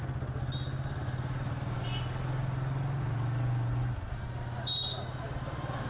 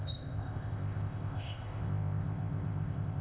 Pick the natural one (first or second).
first